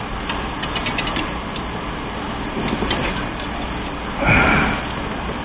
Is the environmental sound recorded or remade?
recorded